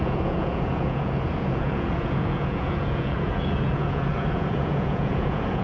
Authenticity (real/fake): fake